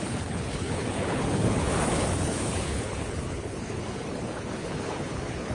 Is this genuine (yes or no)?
no